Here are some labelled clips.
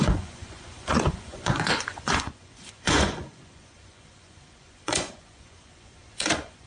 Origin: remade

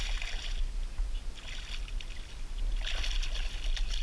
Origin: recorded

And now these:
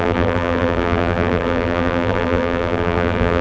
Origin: remade